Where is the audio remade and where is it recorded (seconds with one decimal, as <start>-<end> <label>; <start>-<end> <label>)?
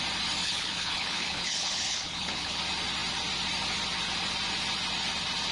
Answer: 0.0-0.4 recorded; 0.4-2.6 remade; 2.6-5.5 recorded